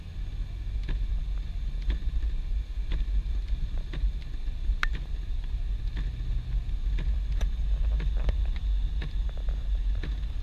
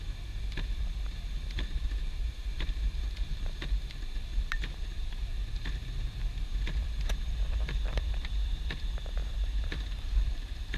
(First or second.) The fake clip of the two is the second